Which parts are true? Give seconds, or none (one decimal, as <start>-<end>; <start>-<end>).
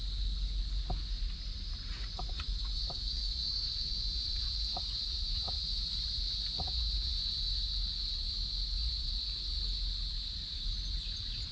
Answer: 0.0-1.9; 7.1-8.8; 9.4-11.5